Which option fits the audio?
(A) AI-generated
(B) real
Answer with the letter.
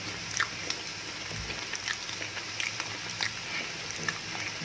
B